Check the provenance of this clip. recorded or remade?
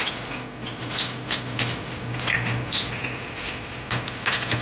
recorded